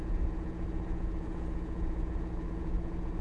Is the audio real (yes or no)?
no